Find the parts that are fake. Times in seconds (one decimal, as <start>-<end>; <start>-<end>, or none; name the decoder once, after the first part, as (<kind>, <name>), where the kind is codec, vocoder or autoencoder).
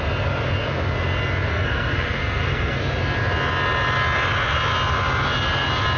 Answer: 1.5-2.8 (codec, SNAC)